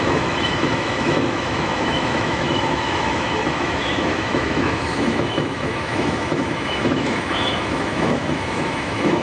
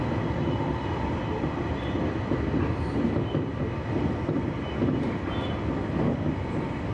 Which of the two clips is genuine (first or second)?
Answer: second